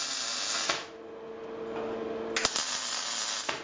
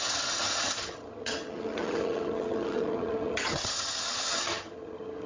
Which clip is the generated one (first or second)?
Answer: second